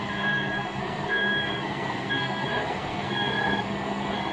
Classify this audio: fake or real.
fake